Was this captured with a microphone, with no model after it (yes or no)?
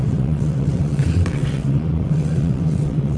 no